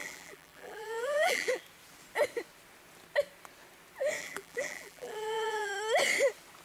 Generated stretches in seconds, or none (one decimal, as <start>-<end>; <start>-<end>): 0.0-1.6; 4.2-5.7